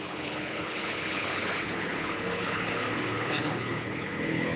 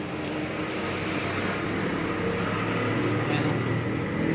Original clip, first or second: second